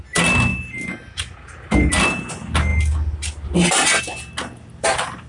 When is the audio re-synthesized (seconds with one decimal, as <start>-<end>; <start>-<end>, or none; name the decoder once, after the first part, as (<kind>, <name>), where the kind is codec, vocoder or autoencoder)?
none